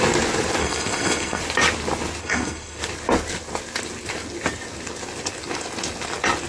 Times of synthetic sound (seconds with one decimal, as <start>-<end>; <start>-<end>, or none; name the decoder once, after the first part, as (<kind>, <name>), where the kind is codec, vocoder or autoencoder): 0.6-1.4 (codec, SNAC); 2.2-2.8